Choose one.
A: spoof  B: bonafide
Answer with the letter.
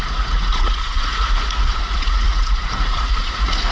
A